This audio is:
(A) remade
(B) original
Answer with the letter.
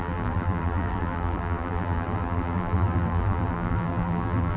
A